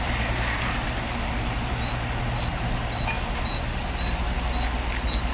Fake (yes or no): no